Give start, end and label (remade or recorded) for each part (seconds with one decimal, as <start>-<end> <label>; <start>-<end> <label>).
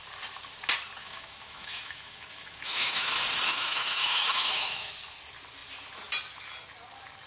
0.0-1.0 recorded; 1.0-3.1 remade; 3.1-3.5 recorded; 3.5-4.9 remade; 4.9-7.3 recorded